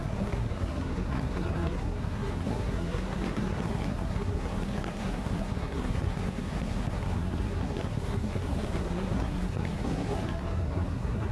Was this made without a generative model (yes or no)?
no